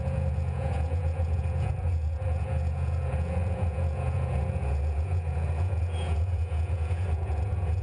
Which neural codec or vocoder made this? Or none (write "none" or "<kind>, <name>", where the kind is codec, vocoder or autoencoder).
vocoder, Vocos